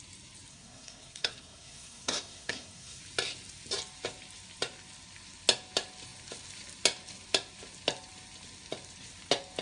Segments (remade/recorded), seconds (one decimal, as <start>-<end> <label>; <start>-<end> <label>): 0.0-0.5 recorded; 0.5-3.0 remade; 3.0-9.6 recorded